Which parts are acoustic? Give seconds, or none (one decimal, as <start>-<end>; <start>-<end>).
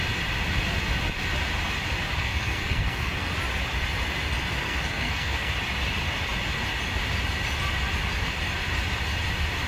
0.0-2.2; 3.3-4.5; 5.5-9.7